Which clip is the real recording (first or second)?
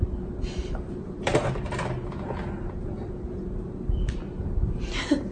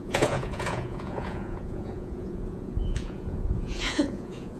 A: first